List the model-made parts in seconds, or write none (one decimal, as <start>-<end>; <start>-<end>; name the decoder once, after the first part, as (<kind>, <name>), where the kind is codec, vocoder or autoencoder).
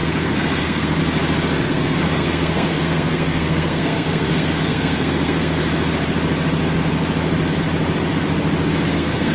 0.0-1.0 (codec, SNAC); 1.6-5.6; 8.9-9.3